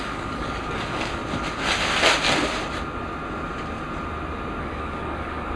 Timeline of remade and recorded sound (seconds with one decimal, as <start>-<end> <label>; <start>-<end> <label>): 0.0-1.2 remade; 1.2-4.6 recorded; 4.6-5.6 remade